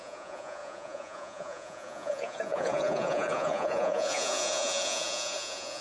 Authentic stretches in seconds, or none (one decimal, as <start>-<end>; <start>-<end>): none